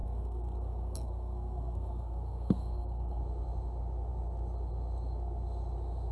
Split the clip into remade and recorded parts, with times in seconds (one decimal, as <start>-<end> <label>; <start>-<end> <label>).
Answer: 0.0-3.2 remade; 3.2-6.1 recorded